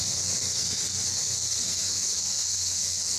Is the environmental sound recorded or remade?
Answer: remade